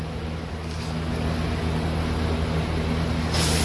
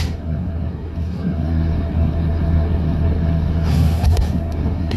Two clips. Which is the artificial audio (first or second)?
second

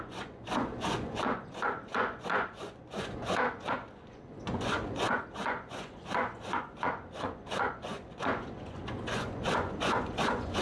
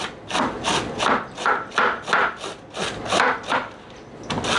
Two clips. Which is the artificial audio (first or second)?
first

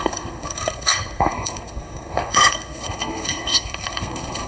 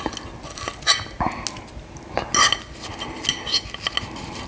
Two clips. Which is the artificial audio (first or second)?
first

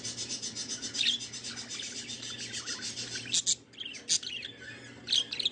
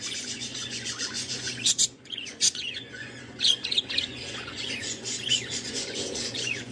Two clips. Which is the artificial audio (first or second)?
second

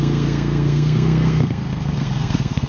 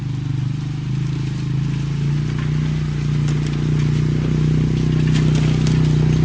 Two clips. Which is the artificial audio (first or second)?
first